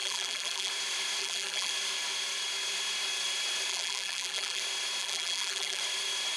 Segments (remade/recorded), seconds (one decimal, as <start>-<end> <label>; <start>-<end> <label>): 0.0-0.7 remade; 0.7-1.2 recorded; 1.2-1.7 remade; 1.7-3.7 recorded; 3.7-4.6 remade; 4.6-5.0 recorded; 5.0-5.8 remade; 5.8-6.4 recorded